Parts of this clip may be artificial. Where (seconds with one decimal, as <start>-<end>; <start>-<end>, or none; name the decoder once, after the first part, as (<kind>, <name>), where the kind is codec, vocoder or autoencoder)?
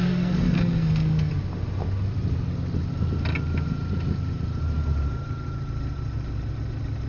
0.0-1.3 (codec, SNAC)